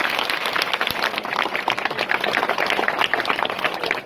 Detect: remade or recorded recorded